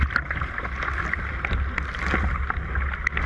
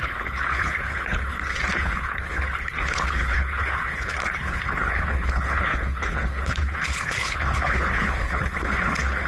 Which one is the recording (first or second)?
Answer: first